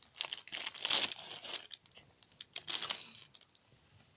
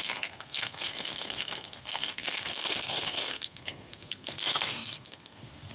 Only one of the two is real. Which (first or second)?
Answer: first